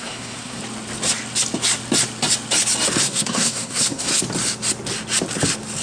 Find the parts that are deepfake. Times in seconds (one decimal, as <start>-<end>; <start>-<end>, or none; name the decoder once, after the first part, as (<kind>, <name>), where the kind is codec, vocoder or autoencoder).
0.0-0.6 (codec, SNAC); 3.0-4.1